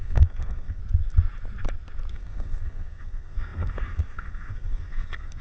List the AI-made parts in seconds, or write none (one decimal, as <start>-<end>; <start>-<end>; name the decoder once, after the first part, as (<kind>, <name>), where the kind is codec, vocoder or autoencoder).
0.0-0.8 (codec, SNAC); 2.1-5.4